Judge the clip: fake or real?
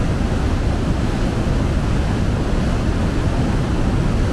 real